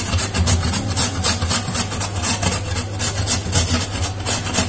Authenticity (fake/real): real